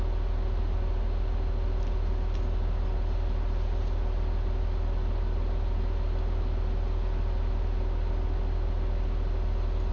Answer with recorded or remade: recorded